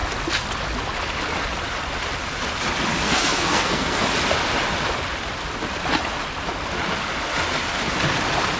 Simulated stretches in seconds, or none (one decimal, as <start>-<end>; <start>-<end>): 3.0-4.0